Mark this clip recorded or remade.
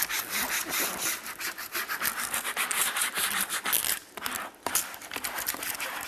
recorded